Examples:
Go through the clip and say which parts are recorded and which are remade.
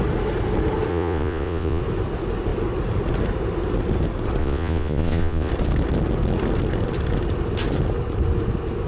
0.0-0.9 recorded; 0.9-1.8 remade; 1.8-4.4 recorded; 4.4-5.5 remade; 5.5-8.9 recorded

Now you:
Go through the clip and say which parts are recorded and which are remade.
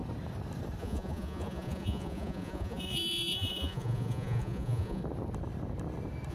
0.0-0.8 recorded; 0.8-5.0 remade; 5.0-6.3 recorded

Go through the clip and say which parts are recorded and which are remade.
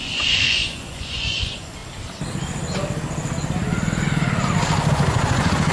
0.0-1.8 remade; 1.8-4.9 recorded; 4.9-5.7 remade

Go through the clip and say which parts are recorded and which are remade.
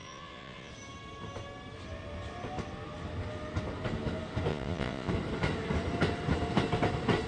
0.0-0.7 remade; 0.7-4.5 recorded; 4.5-5.1 remade; 5.1-7.3 recorded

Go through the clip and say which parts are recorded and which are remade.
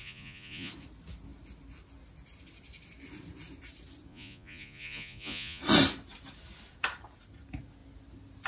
0.0-0.7 remade; 0.7-4.1 recorded; 4.1-5.6 remade; 5.6-8.5 recorded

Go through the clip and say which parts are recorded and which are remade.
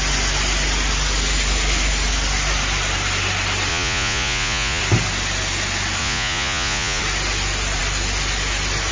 0.0-3.7 recorded; 3.7-4.8 remade; 4.8-6.0 recorded; 6.0-7.0 remade; 7.0-8.9 recorded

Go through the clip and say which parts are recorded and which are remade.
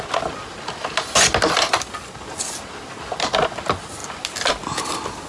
0.0-5.3 recorded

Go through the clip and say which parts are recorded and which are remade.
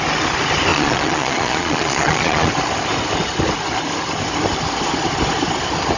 0.0-0.7 recorded; 0.7-2.5 remade; 2.5-6.0 recorded